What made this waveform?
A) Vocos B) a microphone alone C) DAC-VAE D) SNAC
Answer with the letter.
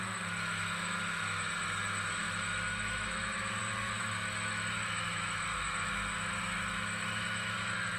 C